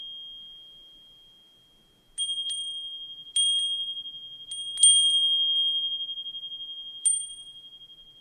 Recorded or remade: recorded